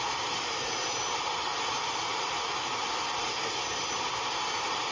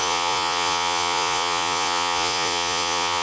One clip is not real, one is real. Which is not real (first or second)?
second